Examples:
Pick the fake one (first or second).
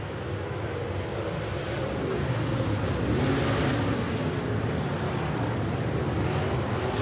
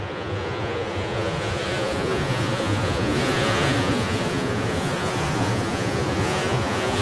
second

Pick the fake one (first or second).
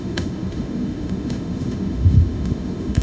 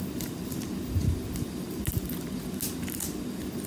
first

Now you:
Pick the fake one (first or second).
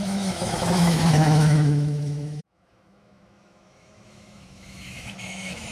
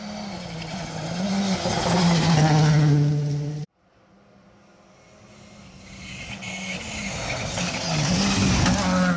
first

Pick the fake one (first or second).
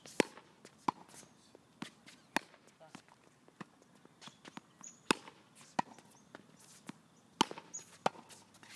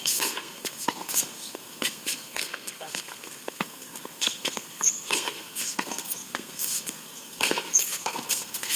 second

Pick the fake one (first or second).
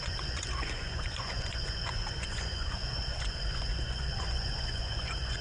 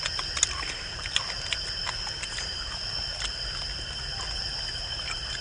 first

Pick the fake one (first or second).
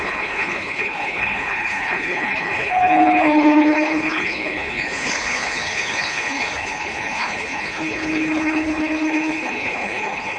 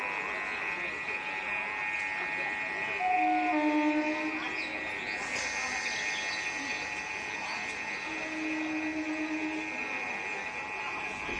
first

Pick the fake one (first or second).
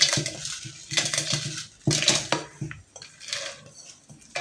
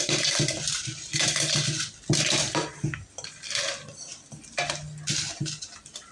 second